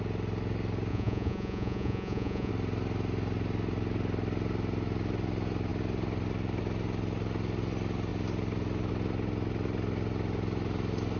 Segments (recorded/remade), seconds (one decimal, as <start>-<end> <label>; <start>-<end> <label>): 0.0-0.9 recorded; 0.9-2.5 remade; 2.5-11.2 recorded